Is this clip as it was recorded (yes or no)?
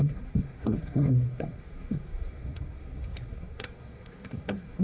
no